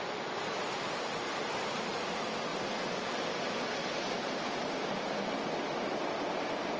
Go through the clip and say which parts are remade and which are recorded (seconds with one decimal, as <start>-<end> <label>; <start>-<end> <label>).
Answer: 0.0-6.8 recorded